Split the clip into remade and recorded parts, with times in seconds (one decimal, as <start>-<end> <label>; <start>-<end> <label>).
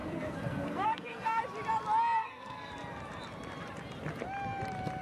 0.0-1.4 remade; 1.4-2.2 recorded; 2.2-2.7 remade; 2.7-5.0 recorded